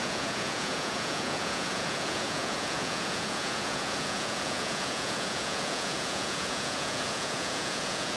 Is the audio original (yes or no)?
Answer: no